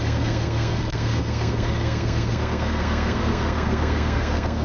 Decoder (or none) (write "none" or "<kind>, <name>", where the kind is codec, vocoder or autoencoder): codec, SNAC